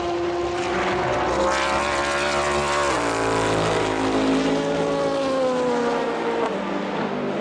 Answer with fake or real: real